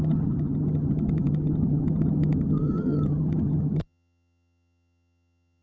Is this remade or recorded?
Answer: remade